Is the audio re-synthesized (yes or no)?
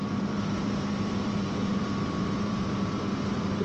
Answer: yes